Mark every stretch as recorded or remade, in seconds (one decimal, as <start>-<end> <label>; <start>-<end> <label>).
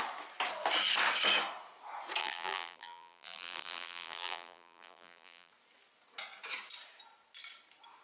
0.0-2.2 recorded; 2.2-5.5 remade; 5.5-8.0 recorded